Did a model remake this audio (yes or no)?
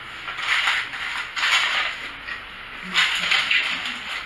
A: no